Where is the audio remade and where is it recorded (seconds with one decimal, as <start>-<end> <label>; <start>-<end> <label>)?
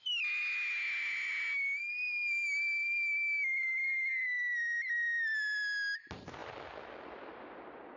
0.0-1.8 recorded; 1.8-4.1 remade; 4.1-8.0 recorded